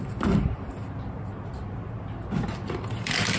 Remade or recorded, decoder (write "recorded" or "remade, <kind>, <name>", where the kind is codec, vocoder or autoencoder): recorded